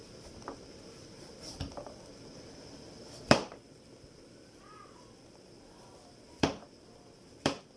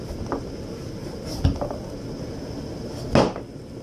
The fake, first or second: first